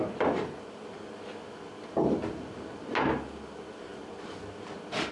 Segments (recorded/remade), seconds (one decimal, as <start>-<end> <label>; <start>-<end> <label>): 0.0-5.1 recorded